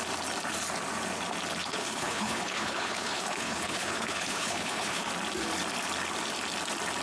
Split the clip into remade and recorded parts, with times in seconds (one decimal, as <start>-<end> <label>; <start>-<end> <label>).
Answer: 0.0-1.6 recorded; 1.6-5.1 remade; 5.1-7.0 recorded